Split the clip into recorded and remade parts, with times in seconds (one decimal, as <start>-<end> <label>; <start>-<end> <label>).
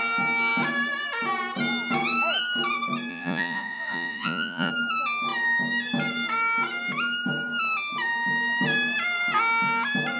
0.0-3.1 recorded; 3.1-4.7 remade; 4.7-10.2 recorded